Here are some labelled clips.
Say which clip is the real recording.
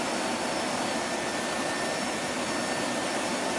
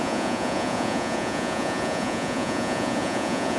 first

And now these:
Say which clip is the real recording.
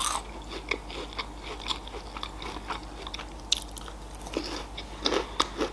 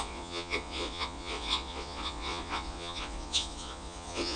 first